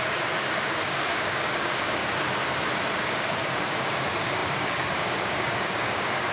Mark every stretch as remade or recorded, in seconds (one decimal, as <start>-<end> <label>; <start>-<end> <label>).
0.0-2.0 remade; 2.0-2.9 recorded; 2.9-6.3 remade